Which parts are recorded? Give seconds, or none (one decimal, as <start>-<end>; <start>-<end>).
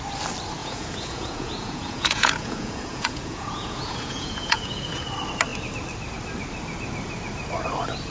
0.0-0.6; 5.1-8.1